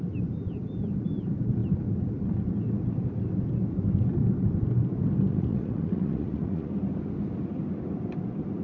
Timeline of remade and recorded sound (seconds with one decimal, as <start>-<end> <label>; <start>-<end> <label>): 0.0-5.3 recorded; 5.3-6.7 remade; 6.7-8.6 recorded